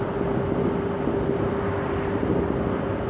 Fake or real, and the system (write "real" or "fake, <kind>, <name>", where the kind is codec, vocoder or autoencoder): real